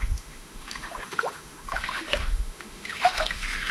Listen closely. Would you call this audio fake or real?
fake